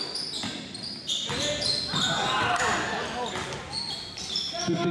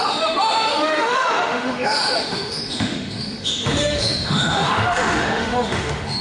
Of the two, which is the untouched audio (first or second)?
first